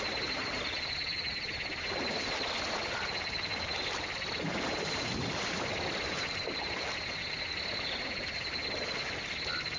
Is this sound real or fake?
real